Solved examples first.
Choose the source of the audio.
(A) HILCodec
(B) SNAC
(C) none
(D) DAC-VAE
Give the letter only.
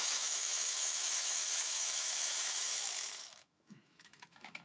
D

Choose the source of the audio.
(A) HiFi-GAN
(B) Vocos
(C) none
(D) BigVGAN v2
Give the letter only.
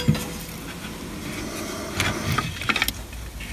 C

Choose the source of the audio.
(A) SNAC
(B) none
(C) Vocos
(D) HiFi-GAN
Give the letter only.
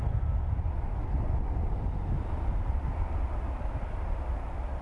B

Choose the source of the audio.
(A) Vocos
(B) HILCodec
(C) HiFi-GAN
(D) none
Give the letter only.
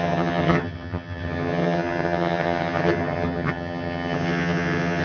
C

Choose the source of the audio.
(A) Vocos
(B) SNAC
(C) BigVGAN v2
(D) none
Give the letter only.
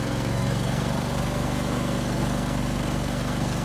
B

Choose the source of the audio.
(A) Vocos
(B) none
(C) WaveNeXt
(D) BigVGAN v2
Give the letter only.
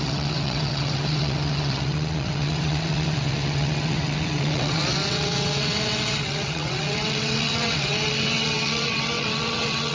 C